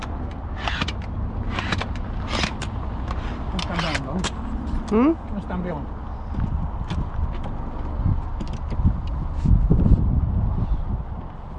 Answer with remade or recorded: recorded